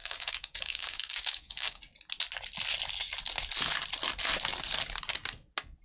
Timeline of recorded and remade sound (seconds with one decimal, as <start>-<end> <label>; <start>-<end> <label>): 0.0-1.8 remade; 1.8-5.8 recorded